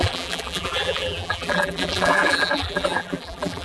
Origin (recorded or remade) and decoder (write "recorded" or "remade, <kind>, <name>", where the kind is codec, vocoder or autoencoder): remade, vocoder, BigVGAN v2